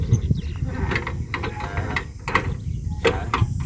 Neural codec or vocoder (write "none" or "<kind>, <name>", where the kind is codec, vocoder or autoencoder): none